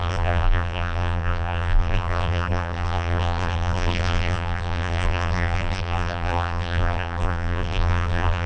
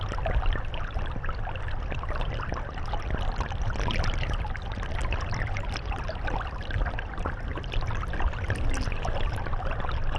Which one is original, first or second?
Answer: second